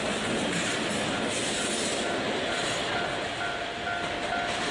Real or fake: real